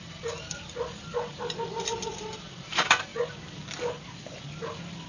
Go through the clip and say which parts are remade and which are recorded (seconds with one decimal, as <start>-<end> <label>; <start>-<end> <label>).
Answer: 0.0-5.1 recorded